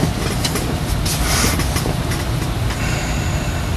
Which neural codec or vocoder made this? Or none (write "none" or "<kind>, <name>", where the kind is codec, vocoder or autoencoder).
none